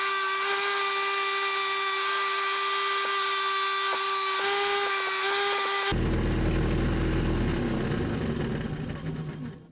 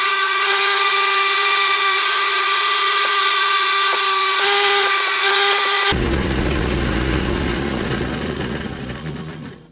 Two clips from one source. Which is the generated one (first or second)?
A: second